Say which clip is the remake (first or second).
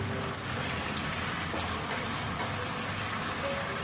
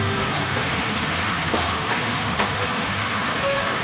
second